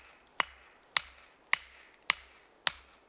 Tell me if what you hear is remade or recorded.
recorded